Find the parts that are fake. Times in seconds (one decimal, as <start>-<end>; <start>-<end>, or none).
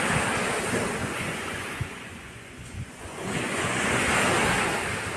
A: 1.0-4.1